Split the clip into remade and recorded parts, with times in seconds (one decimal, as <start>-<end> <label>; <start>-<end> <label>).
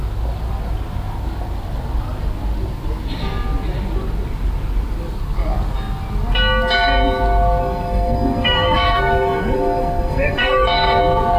0.0-7.6 recorded; 7.6-11.0 remade; 11.0-11.4 recorded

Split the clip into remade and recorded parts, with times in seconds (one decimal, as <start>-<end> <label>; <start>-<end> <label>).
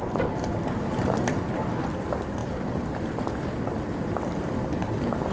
0.0-5.3 recorded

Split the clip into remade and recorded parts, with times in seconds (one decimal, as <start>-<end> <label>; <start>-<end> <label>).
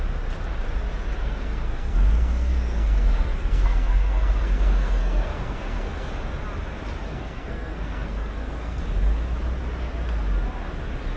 0.0-1.2 recorded; 1.2-6.1 remade; 6.1-7.1 recorded; 7.1-8.8 remade; 8.8-11.2 recorded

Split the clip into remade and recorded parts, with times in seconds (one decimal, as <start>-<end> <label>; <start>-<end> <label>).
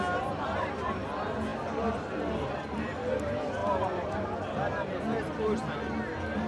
0.0-6.5 recorded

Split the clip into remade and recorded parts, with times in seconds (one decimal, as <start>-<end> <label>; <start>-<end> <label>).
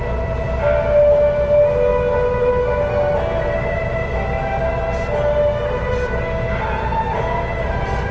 0.0-8.1 recorded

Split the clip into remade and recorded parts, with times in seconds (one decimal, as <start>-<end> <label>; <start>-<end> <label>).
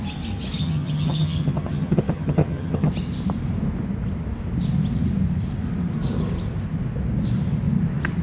0.0-0.6 recorded; 0.6-2.9 remade; 2.9-8.2 recorded